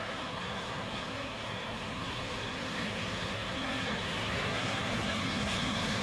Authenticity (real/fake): fake